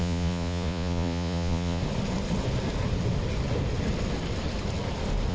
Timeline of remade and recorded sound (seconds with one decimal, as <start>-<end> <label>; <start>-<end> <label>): 0.0-1.8 remade; 1.8-5.3 recorded